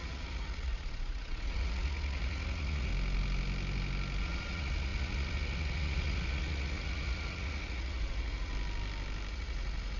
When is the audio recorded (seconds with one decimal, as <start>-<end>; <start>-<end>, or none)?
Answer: 2.9-4.2; 8.5-9.3